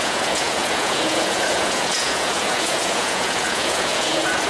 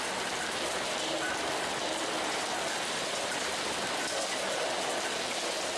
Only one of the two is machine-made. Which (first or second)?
first